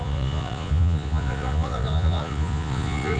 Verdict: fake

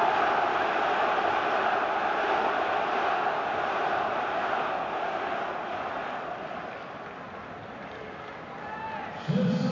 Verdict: real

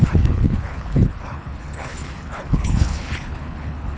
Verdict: fake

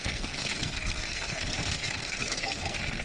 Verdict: fake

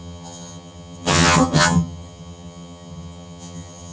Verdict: fake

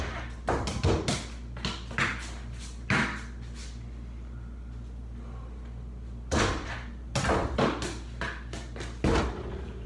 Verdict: real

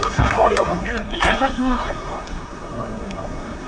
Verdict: fake